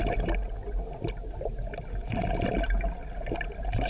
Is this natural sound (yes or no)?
yes